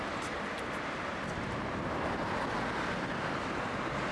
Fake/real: real